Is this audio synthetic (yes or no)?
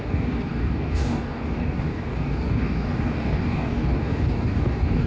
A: yes